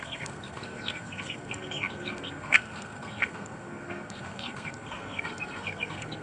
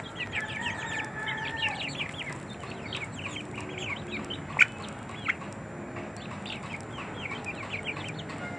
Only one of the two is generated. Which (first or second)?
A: first